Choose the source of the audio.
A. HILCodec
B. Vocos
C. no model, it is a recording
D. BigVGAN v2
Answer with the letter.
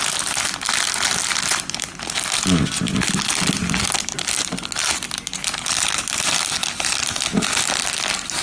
C